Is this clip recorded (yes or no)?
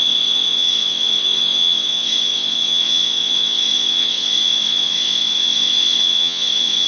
no